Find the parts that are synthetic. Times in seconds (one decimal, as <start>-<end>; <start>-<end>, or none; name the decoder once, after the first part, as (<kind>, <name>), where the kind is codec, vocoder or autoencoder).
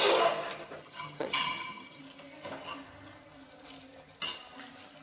0.8-2.0 (vocoder, HiFi-GAN)